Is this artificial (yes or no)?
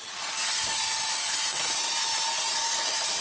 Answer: no